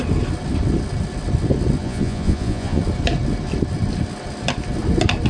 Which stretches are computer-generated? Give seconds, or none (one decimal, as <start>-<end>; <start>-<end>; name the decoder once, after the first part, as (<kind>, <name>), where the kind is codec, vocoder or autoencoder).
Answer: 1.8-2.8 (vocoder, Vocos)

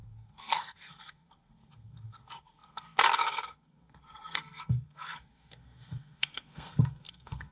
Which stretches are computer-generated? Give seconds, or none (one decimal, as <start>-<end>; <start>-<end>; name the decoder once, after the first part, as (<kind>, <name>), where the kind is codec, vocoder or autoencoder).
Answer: 0.0-7.5 (codec, SNAC)

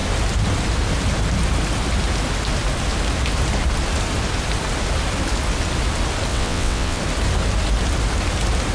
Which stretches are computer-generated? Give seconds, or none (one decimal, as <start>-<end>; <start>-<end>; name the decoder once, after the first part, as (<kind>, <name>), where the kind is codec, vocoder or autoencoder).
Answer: 6.3-7.0 (vocoder, WaveNeXt)